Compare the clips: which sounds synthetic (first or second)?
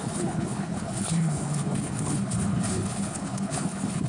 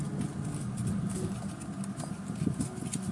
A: first